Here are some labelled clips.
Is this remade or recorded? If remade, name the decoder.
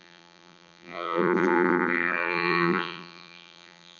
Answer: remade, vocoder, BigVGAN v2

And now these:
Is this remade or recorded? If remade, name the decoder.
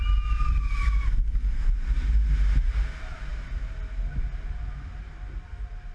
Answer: recorded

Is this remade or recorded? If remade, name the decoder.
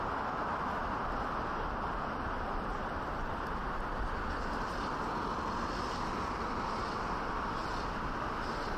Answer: recorded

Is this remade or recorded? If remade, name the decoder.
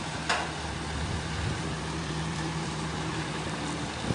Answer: remade, vocoder, BigVGAN v2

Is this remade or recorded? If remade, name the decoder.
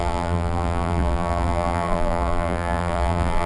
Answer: remade, vocoder, BigVGAN v2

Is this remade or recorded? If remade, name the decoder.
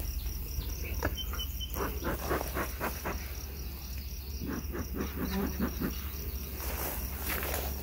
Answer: recorded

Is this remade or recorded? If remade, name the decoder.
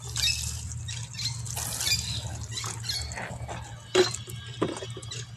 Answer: recorded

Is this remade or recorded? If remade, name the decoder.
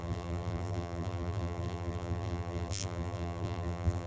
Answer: remade, vocoder, BigVGAN v2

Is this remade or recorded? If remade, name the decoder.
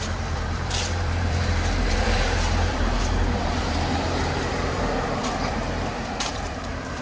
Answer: remade, vocoder, BigVGAN v2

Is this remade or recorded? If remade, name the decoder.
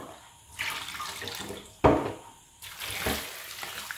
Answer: recorded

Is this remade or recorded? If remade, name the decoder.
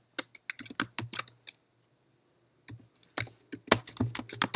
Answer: recorded